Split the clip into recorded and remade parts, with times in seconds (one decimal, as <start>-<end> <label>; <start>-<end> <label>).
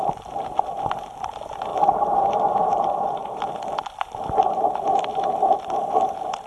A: 0.0-1.7 recorded; 1.7-3.5 remade; 3.5-6.5 recorded